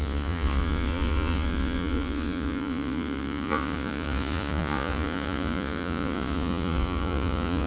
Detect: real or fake fake